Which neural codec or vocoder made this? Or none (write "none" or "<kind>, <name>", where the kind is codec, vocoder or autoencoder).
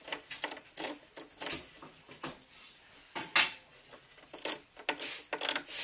none